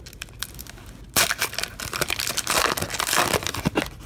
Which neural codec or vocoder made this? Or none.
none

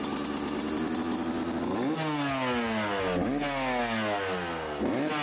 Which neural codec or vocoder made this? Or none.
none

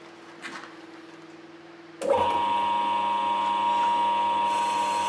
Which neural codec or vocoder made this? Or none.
none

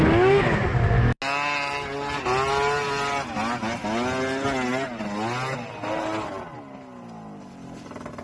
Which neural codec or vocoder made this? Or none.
none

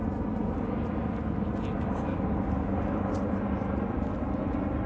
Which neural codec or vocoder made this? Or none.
none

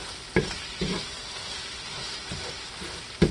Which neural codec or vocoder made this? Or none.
none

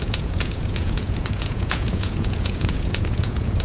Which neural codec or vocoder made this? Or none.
vocoder, Vocos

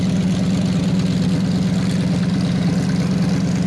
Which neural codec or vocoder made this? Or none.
none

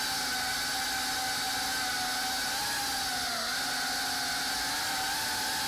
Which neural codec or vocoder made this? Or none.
none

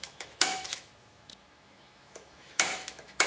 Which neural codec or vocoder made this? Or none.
autoencoder, DAC-VAE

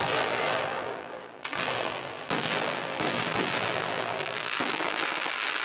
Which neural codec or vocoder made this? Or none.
vocoder, BigVGAN v2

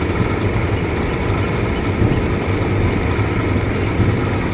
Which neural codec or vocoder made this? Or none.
none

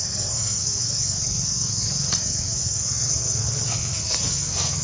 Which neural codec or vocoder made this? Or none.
codec, SNAC